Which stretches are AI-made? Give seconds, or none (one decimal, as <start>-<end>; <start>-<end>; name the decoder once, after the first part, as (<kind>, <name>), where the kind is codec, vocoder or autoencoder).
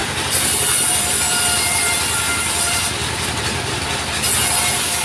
0.0-1.8 (vocoder, BigVGAN v2)